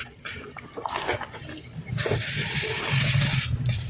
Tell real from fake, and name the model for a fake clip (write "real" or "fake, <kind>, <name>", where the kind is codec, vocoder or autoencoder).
real